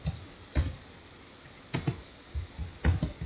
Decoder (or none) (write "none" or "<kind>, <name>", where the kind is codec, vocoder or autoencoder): none